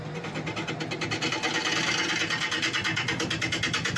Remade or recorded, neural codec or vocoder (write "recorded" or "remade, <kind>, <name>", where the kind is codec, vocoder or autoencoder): recorded